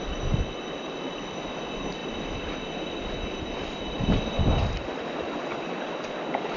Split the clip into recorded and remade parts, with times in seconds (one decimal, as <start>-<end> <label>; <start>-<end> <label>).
0.0-6.6 recorded